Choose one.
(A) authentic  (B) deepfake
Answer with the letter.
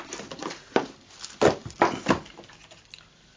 A